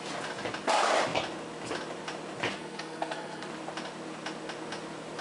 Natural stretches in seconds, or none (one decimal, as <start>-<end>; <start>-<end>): 0.0-2.5; 3.5-5.2